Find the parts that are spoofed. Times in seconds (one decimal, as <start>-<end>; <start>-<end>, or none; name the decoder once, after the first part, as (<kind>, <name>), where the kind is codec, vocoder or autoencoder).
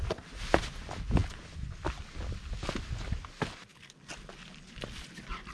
none